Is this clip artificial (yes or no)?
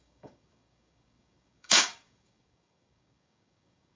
yes